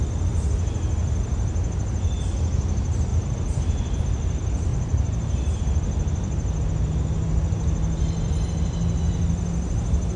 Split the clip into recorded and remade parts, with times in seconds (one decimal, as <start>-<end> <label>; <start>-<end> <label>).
0.0-3.1 recorded; 3.1-4.0 remade; 4.0-4.7 recorded; 4.7-5.6 remade; 5.6-10.2 recorded